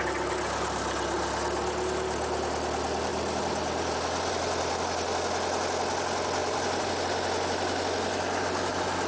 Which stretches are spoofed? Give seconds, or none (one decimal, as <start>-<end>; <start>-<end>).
3.1-4.7; 6.4-6.9

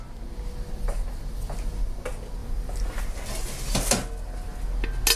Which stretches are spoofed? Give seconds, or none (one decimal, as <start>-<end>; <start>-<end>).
2.4-3.0

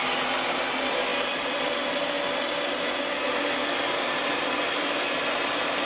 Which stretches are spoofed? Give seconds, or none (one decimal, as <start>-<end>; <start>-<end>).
none

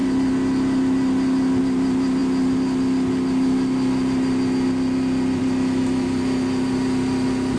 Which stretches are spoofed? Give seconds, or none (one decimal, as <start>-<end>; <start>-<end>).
none

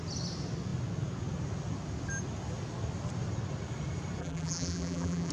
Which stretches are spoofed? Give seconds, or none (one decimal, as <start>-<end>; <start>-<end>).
4.2-5.3

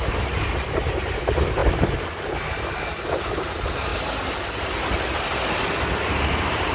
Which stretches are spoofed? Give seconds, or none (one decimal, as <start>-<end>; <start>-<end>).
0.0-3.9; 5.9-6.7

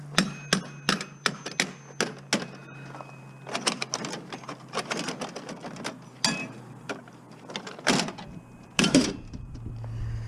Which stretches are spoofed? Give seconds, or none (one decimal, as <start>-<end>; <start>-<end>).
6.4-6.9; 8.5-9.7